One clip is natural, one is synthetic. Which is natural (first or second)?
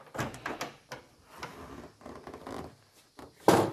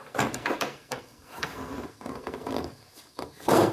first